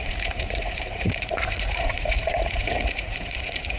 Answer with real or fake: fake